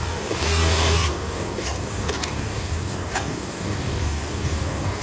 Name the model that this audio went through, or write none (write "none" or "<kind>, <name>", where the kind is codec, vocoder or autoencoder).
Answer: codec, DAC